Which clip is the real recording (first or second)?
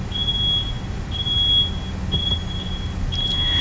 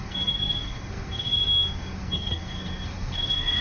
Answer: first